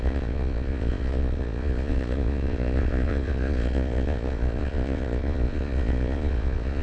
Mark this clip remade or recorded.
remade